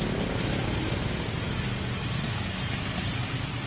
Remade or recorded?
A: recorded